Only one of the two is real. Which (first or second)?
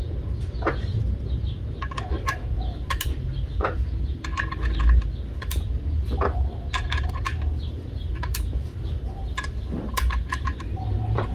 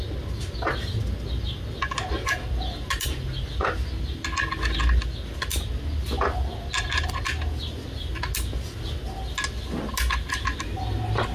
second